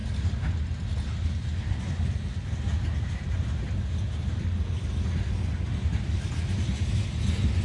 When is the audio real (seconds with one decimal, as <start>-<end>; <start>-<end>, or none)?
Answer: 0.0-7.6